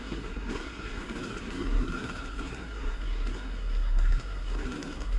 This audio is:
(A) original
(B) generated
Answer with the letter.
B